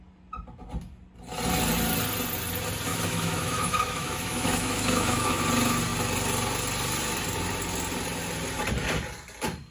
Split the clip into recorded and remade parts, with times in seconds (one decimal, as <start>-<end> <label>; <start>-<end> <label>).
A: 0.0-2.9 recorded; 2.9-5.4 remade; 5.4-9.7 recorded